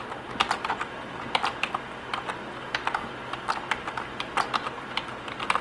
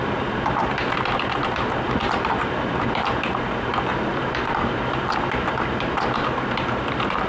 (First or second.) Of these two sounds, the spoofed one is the second